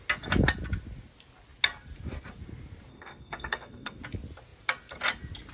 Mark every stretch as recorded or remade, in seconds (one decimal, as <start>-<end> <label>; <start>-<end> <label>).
0.0-2.9 recorded; 2.9-4.0 remade; 4.0-5.5 recorded